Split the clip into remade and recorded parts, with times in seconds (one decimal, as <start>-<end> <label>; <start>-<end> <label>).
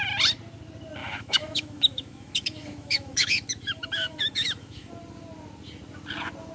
0.0-1.0 recorded; 1.0-4.9 remade; 4.9-6.5 recorded